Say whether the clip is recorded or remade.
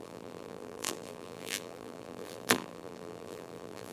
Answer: remade